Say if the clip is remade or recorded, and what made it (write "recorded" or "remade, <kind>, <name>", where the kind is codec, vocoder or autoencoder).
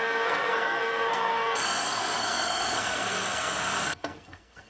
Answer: remade, codec, SNAC